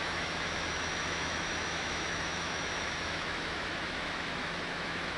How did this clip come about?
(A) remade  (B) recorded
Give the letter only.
A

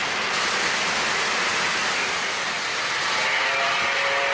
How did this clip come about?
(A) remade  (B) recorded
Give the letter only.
B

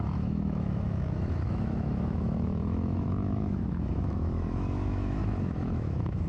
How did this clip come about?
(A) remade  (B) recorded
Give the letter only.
A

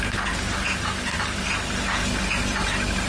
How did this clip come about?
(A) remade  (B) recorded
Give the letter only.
B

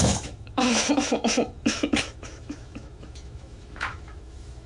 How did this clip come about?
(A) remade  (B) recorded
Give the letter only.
A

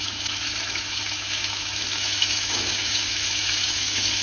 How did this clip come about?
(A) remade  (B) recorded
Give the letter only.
A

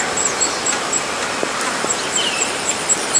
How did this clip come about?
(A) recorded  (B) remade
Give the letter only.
A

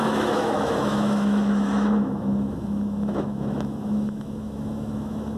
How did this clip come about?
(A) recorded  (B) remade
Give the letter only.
B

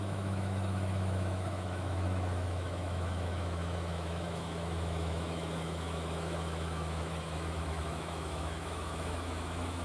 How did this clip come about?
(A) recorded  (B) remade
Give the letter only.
B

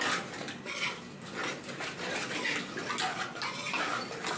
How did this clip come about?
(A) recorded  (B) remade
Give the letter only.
A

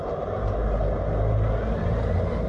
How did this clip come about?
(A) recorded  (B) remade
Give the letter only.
A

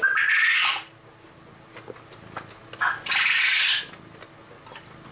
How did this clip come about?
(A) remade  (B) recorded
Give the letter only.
B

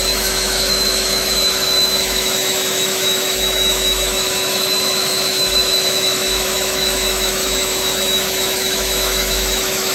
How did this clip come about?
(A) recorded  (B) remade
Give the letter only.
B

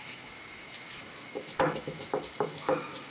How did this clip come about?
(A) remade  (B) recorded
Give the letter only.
A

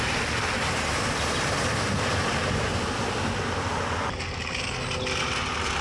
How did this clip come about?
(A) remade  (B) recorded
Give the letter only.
B